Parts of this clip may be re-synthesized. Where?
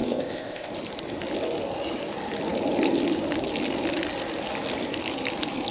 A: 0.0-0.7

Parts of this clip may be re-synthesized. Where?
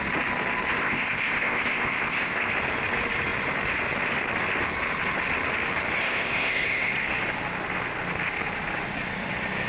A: 0.8-2.5; 6.0-6.9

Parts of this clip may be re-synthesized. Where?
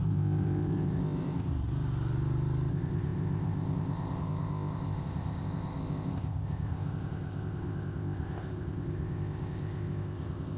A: 0.0-1.5; 2.7-10.6